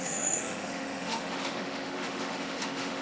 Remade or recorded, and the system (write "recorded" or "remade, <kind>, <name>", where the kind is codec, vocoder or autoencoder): remade, autoencoder, DAC-VAE